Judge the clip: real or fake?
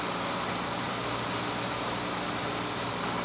real